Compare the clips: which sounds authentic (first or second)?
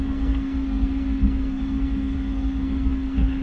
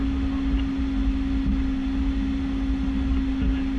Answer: second